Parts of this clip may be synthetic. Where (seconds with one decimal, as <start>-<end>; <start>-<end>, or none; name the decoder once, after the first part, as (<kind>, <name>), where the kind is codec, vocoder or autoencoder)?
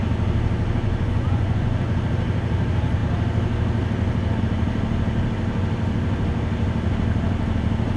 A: 0.8-2.0 (vocoder, Vocos)